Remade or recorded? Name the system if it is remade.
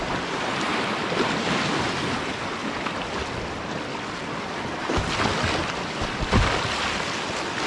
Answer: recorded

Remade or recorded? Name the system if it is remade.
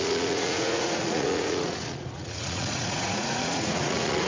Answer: remade, vocoder, Vocos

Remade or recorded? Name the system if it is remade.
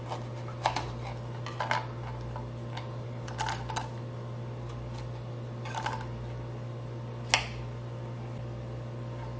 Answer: recorded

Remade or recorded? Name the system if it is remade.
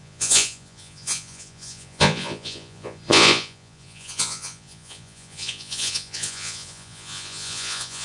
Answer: remade, vocoder, Vocos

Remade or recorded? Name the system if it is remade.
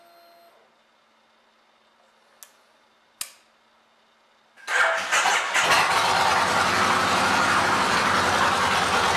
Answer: recorded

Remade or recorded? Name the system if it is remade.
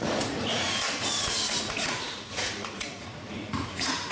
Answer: remade, vocoder, Vocos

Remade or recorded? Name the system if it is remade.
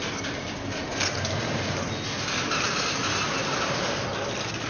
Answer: recorded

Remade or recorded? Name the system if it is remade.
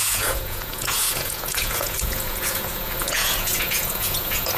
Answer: remade, vocoder, Vocos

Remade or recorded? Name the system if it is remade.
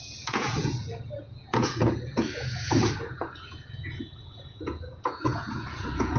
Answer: remade, vocoder, Vocos